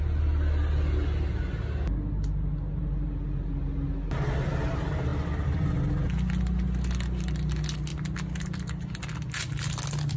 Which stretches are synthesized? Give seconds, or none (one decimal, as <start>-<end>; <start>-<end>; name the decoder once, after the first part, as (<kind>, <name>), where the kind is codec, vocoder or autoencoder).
none